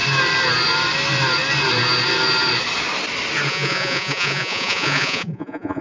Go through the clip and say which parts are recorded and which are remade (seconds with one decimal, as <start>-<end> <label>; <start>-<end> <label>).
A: 0.0-3.5 recorded; 3.5-5.8 remade

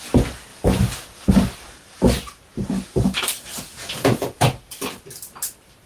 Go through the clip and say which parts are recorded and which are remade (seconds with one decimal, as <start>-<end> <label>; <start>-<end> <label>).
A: 0.0-3.5 recorded; 3.5-4.6 remade; 4.6-5.9 recorded

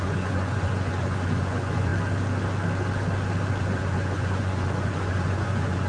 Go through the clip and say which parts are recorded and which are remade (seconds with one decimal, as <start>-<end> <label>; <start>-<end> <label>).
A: 0.0-1.9 remade; 1.9-3.6 recorded; 3.6-5.9 remade